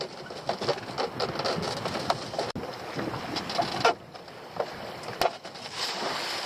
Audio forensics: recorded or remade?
recorded